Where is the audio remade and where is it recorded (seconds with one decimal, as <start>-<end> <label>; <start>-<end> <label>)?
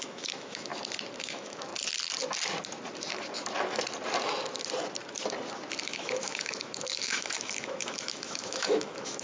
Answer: 0.0-0.7 remade; 0.7-1.2 recorded; 1.2-1.7 remade; 1.7-5.9 recorded; 5.9-9.2 remade